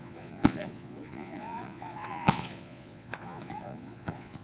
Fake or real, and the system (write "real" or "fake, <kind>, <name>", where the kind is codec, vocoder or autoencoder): fake, vocoder, Vocos